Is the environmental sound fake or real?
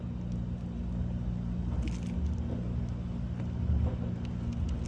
real